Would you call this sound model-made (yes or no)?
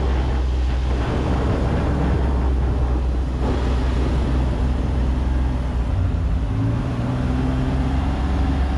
no